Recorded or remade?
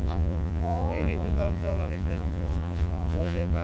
remade